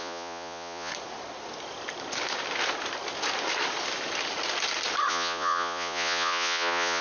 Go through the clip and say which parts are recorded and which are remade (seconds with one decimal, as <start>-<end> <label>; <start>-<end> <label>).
0.0-0.9 remade; 0.9-5.1 recorded; 5.1-7.0 remade

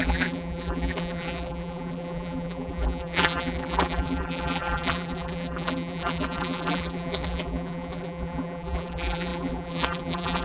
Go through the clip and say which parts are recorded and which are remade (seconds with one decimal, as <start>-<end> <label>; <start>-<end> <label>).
0.0-10.4 remade

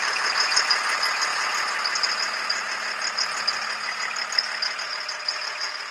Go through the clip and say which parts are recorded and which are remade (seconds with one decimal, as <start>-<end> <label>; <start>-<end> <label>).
0.0-5.9 recorded